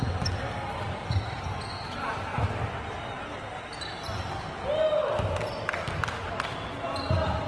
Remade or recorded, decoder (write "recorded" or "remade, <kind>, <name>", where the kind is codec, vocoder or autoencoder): recorded